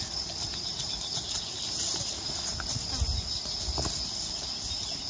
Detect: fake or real real